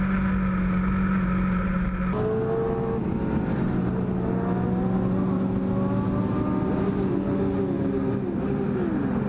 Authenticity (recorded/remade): recorded